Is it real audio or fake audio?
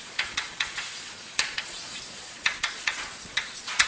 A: fake